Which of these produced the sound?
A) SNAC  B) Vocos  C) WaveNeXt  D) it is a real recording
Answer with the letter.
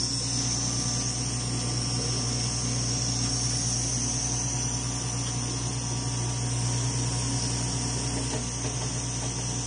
D